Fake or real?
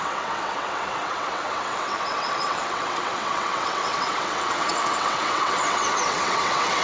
fake